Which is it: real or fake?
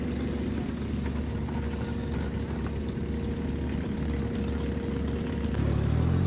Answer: real